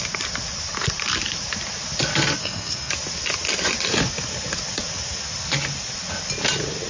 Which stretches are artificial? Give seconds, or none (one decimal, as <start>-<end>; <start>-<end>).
2.4-2.9